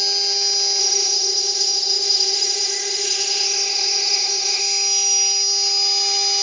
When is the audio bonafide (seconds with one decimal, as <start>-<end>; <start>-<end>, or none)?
0.0-0.8; 4.6-6.4